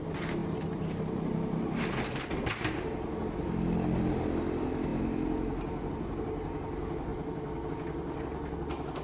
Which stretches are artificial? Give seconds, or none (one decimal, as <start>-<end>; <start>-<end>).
none